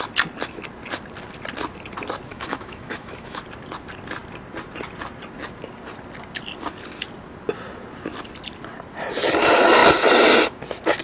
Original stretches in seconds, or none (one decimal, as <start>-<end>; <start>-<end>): 0.0-2.3; 3.4-11.0